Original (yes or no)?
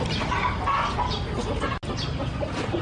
yes